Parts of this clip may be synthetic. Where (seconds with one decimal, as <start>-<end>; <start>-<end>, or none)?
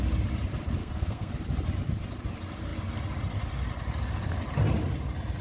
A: 0.8-1.3